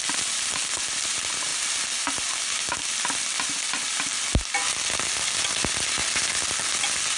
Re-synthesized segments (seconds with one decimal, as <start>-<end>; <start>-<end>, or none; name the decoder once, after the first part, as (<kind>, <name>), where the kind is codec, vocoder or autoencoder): none